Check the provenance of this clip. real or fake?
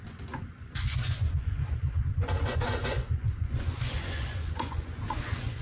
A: fake